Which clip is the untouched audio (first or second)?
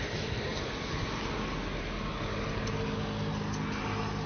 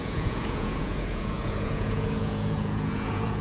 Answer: first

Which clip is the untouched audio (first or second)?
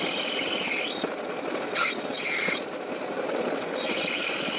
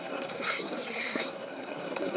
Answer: first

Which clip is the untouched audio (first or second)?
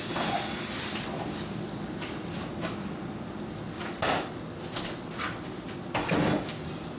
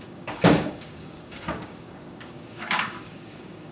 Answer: first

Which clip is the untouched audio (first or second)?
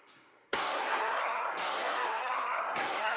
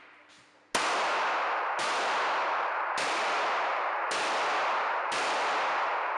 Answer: second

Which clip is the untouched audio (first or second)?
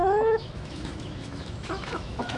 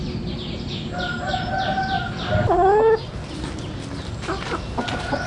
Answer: second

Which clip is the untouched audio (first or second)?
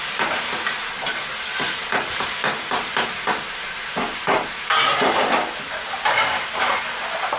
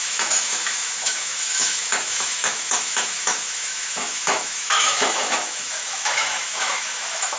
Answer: first